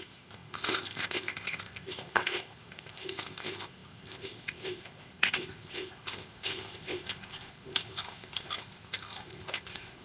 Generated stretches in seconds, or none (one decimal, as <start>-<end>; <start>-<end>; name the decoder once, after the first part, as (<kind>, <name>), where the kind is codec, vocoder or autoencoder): 0.0-10.0 (codec, ZipCodec)